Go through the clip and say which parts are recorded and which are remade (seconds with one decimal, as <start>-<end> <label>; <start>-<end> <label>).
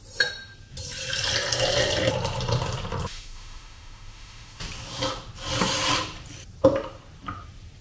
0.0-3.1 recorded; 3.1-4.6 remade; 4.6-7.8 recorded